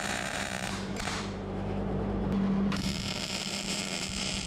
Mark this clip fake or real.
fake